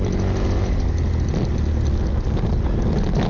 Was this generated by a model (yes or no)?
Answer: no